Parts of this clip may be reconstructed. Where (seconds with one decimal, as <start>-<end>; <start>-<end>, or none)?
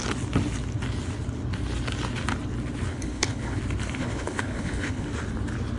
2.9-3.6; 4.0-5.1